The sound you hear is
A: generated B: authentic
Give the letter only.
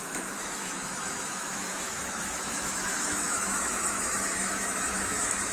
A